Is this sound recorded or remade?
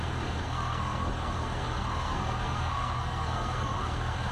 remade